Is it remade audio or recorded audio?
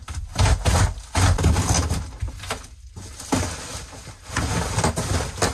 recorded